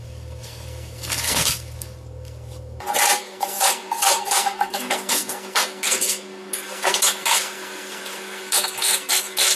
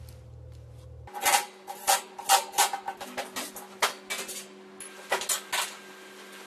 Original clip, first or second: second